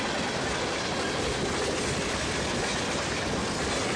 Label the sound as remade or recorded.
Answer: recorded